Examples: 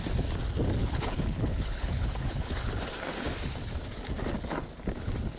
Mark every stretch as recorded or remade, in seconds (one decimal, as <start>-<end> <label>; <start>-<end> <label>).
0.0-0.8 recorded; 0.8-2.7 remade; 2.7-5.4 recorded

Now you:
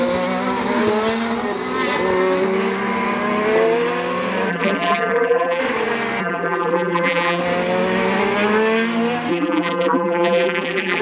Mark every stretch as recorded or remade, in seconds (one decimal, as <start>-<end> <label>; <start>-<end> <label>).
0.0-4.5 recorded; 4.5-5.6 remade; 5.6-6.2 recorded; 6.2-7.4 remade; 7.4-9.3 recorded; 9.3-11.0 remade

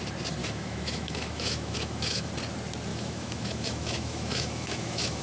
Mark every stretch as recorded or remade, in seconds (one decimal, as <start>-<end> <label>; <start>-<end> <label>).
0.0-0.4 recorded; 0.4-2.3 remade; 2.3-2.9 recorded; 2.9-5.2 remade

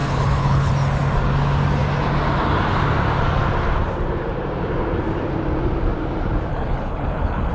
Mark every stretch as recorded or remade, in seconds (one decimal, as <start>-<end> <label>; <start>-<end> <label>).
0.0-0.7 remade; 0.7-6.5 recorded; 6.5-7.5 remade

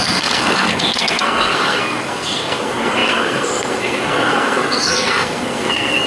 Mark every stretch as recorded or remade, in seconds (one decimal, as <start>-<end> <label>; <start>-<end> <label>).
0.0-6.1 remade